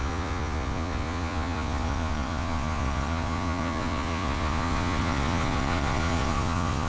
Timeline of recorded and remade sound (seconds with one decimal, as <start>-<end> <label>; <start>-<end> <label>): 0.0-6.9 remade